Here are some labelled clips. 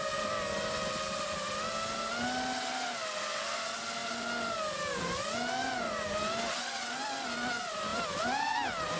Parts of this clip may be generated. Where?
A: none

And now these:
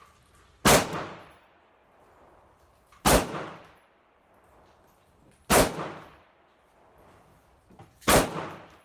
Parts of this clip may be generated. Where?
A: 1.8-4.0 (vocoder, BigVGAN v2)

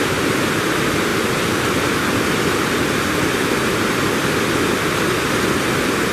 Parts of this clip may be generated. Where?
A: none

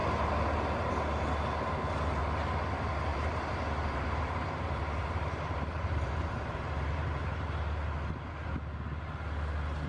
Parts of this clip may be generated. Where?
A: 3.1-7.3 (vocoder, BigVGAN v2)

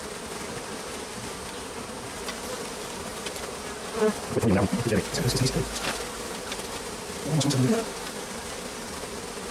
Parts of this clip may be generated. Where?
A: none

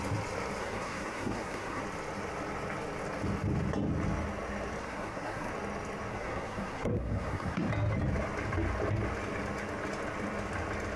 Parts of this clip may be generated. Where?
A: 0.6-1.8 (codec, SNAC); 4.8-5.5; 6.1-7.7

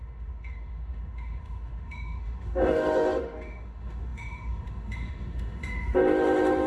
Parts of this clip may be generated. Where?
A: 0.0-6.7 (autoencoder, DAC-VAE)